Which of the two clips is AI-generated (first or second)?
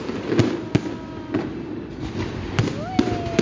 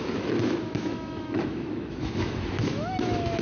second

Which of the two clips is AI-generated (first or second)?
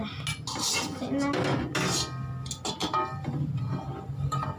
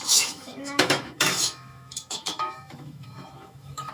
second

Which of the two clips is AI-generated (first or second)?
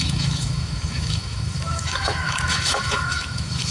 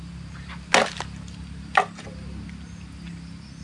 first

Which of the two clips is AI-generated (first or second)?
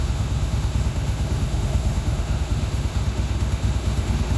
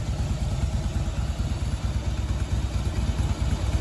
first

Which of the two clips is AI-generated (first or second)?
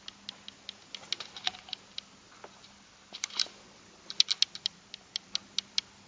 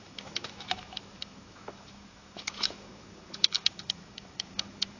second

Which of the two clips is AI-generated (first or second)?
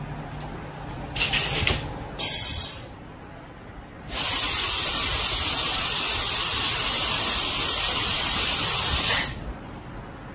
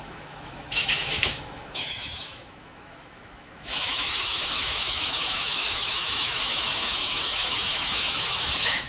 second